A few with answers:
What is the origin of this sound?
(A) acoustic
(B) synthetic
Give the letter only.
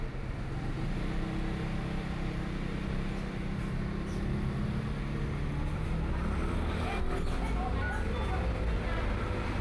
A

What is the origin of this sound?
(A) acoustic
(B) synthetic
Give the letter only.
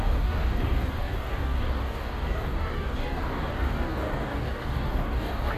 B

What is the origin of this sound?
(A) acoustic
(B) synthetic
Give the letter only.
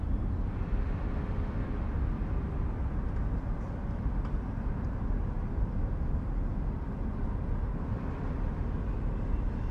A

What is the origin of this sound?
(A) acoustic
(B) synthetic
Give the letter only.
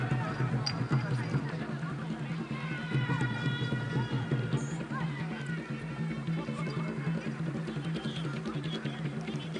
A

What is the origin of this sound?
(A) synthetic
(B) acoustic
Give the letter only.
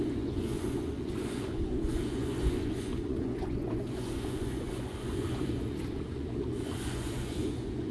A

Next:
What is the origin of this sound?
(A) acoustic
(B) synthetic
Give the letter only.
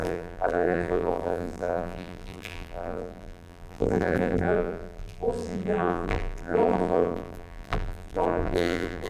B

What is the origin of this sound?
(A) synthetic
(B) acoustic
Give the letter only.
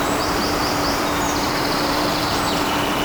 A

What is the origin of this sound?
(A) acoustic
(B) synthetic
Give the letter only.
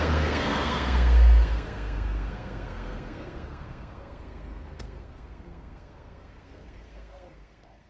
B